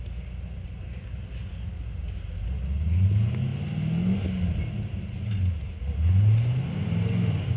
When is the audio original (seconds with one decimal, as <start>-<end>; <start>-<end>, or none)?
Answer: 0.0-7.6